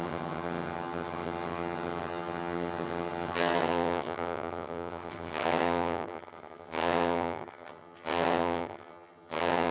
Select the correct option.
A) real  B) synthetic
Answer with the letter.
B